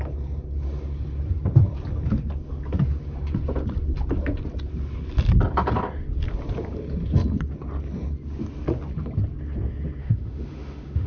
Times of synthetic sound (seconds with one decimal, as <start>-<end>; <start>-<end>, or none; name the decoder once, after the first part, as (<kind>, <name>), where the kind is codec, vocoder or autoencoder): 10.0-11.1 (autoencoder, DAC-VAE)